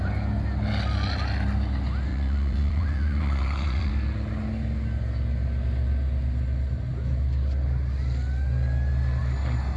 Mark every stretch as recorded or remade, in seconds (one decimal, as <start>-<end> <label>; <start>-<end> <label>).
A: 0.0-2.1 recorded; 2.1-3.9 remade; 3.9-9.8 recorded